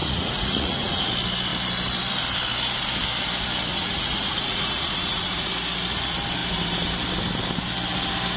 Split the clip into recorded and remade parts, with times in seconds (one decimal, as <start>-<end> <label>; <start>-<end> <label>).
0.0-1.1 remade; 1.1-3.7 recorded; 3.7-5.5 remade; 5.5-8.4 recorded